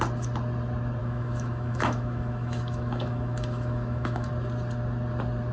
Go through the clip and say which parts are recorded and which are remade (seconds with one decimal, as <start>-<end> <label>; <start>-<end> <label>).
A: 0.0-1.0 recorded; 1.0-4.3 remade; 4.3-5.5 recorded